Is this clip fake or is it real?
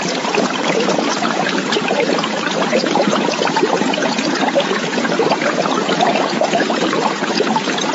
fake